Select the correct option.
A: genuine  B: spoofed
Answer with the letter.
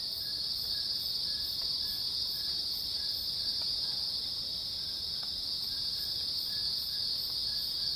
A